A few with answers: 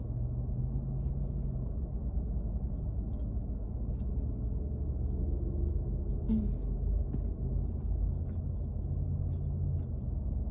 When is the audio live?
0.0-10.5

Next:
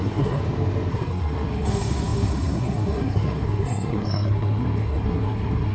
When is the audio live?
0.4-0.9